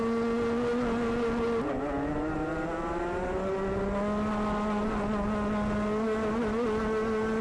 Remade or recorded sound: recorded